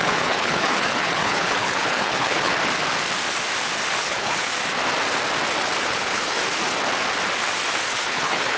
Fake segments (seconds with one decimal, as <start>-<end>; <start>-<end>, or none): 0.0-2.5; 4.0-4.5; 5.8-6.4; 7.9-8.6

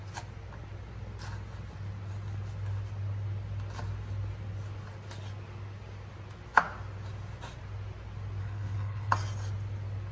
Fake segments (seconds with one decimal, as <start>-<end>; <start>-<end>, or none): 8.4-9.1

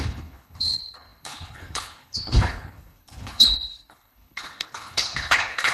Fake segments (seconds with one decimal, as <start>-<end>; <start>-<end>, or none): 0.0-5.7

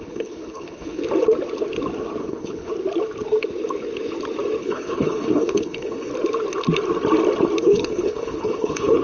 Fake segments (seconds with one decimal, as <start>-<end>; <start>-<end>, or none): 0.0-1.0; 2.2-2.7; 4.6-6.1; 7.6-9.0

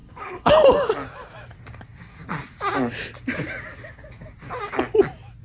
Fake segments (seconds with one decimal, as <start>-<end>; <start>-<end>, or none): 0.0-0.5